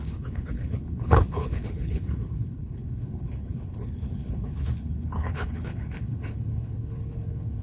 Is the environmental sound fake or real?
fake